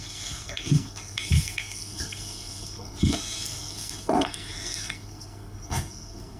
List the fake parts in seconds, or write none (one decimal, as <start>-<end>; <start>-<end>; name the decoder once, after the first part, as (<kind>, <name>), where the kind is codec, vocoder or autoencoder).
0.0-6.4 (codec, SNAC)